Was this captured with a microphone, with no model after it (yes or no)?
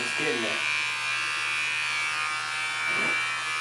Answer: yes